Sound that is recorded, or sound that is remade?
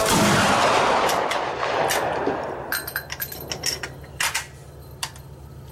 recorded